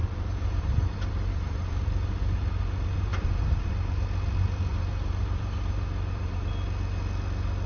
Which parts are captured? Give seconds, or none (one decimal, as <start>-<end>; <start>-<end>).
1.8-3.1; 3.7-4.7; 6.5-7.7